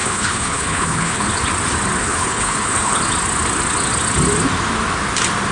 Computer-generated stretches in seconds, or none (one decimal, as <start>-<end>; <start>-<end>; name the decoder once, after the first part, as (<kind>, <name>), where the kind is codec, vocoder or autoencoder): 0.0-1.3 (codec, HILCodec); 2.0-3.0